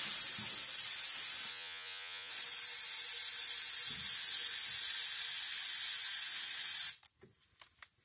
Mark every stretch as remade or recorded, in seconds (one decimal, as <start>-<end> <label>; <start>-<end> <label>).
0.0-1.5 recorded; 1.5-2.3 remade; 2.3-8.0 recorded